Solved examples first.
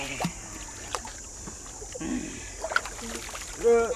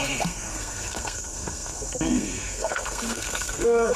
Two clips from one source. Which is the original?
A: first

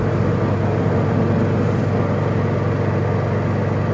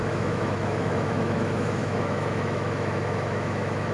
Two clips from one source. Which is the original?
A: first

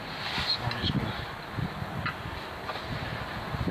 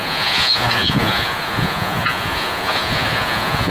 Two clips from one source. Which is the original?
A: first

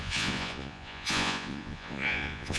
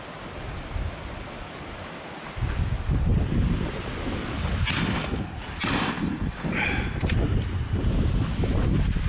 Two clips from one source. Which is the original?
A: second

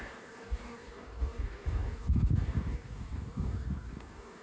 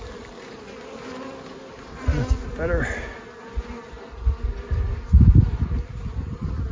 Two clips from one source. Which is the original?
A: second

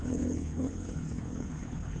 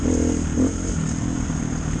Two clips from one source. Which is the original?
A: second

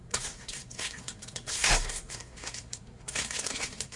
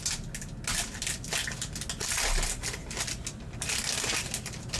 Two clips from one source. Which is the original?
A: second